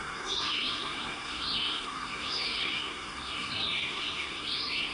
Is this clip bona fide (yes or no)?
no